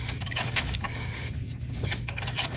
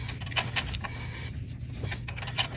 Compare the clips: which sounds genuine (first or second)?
second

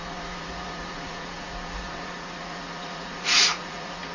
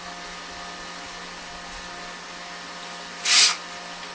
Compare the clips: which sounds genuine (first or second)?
second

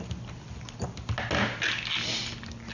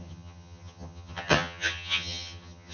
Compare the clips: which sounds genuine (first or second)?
first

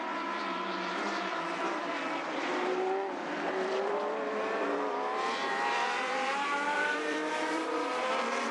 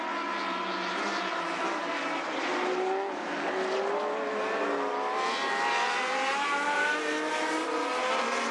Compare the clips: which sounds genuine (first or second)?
second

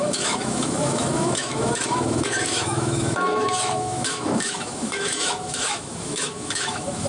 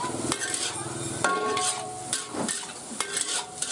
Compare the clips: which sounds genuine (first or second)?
second